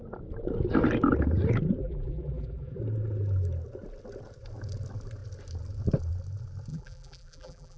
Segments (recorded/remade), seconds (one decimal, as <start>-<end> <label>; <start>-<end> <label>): 0.0-1.8 recorded; 1.8-2.8 remade; 2.8-6.7 recorded; 6.7-7.8 remade